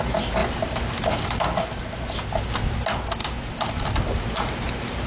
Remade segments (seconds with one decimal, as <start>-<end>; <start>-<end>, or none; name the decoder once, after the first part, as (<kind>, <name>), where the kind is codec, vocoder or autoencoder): 0.4-2.2 (vocoder, BigVGAN v2); 3.2-5.1